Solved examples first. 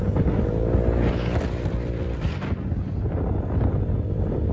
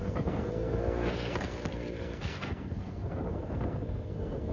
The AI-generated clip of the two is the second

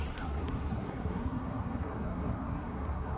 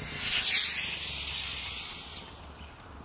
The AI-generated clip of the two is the first